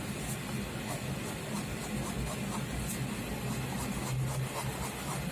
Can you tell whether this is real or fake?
real